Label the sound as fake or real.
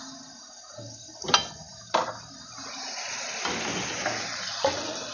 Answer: real